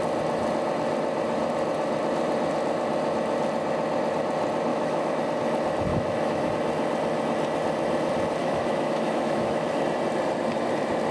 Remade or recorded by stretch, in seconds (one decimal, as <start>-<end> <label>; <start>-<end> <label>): 0.0-4.7 recorded; 4.7-5.2 remade; 5.2-5.9 recorded; 5.9-6.5 remade; 6.5-8.4 recorded; 8.4-9.8 remade; 9.8-11.1 recorded